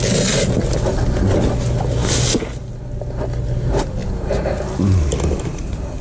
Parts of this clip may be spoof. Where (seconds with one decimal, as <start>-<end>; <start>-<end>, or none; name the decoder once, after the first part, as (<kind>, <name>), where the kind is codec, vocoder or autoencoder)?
4.0-4.5 (vocoder, BigVGAN v2)